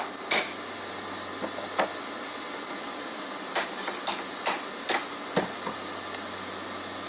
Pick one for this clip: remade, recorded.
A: recorded